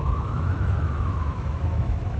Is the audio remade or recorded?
remade